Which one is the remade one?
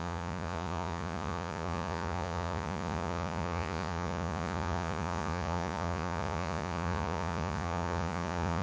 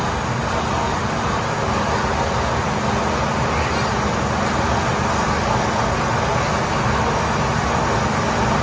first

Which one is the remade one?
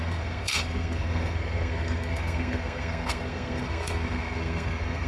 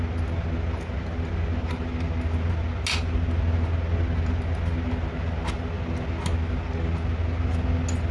first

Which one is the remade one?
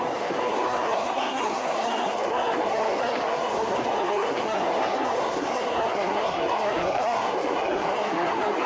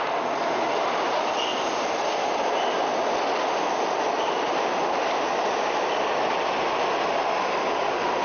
first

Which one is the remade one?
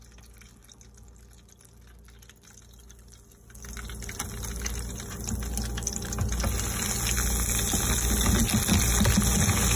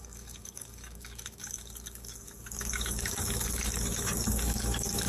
second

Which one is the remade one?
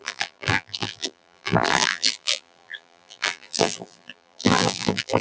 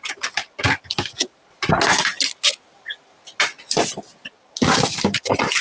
first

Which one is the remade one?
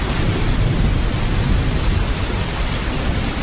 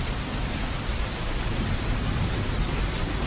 second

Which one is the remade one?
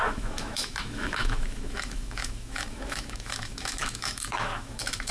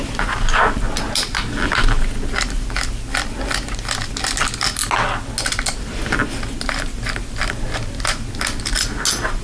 first